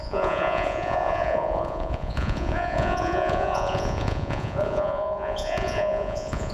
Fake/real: fake